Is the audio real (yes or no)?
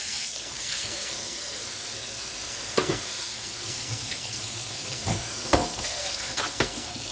no